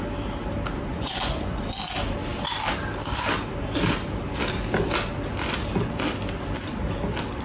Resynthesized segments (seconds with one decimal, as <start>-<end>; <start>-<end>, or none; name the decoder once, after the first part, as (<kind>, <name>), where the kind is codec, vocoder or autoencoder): 0.9-1.6 (vocoder, Vocos)